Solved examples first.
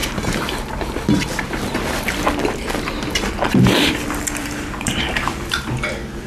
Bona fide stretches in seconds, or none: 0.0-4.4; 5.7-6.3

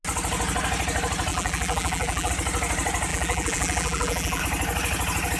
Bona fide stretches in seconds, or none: 0.0-1.3; 2.3-3.1; 4.4-5.4

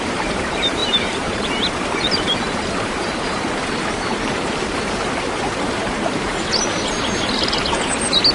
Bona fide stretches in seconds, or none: none

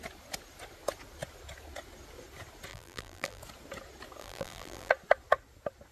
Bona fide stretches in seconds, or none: 0.0-2.7; 3.4-4.2; 4.9-5.9

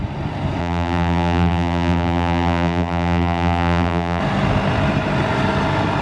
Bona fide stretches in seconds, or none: 0.0-0.6; 4.2-6.0